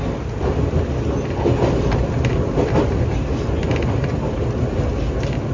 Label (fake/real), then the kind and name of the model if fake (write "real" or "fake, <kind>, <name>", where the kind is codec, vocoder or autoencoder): real